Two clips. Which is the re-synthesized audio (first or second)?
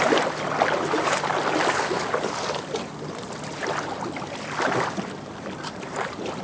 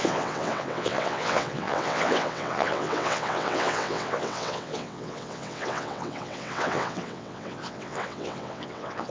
second